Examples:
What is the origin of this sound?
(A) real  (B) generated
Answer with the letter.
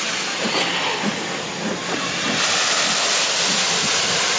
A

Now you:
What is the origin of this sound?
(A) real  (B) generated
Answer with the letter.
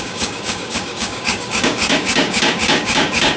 B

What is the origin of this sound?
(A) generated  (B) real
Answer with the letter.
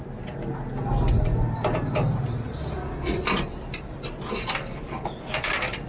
B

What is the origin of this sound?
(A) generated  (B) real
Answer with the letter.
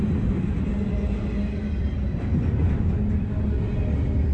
B